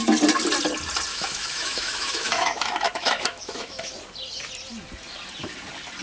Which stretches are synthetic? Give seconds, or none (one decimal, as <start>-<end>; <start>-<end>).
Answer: 1.1-3.9